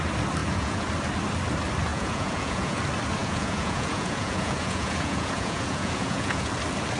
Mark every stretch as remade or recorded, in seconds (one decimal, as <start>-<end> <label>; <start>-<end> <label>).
0.0-0.4 recorded; 0.4-0.9 remade; 0.9-1.9 recorded; 1.9-2.8 remade; 2.8-3.2 recorded; 3.2-6.5 remade; 6.5-7.0 recorded